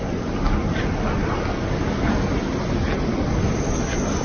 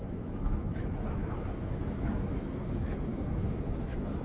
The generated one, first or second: second